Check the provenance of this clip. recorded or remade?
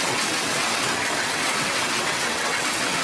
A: remade